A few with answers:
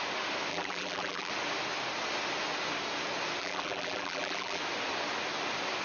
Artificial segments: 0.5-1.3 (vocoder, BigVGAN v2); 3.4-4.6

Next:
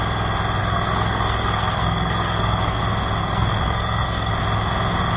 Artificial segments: 0.6-2.8 (codec, SNAC); 3.2-4.3